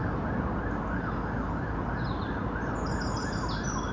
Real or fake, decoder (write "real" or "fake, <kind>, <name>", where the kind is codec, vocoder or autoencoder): real